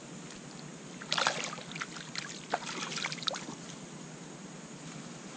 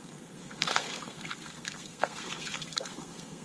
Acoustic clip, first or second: first